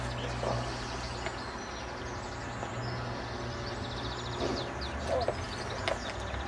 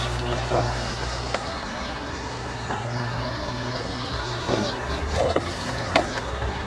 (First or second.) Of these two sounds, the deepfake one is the second